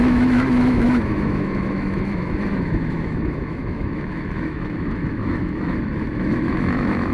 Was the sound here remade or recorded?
remade